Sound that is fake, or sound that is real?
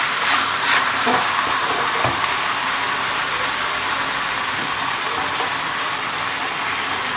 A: fake